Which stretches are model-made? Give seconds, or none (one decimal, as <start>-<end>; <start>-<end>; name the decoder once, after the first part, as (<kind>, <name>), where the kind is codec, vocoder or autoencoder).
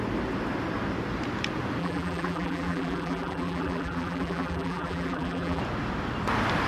1.8-5.6 (vocoder, BigVGAN v2)